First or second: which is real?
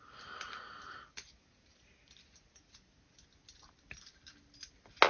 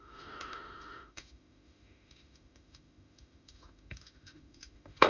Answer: first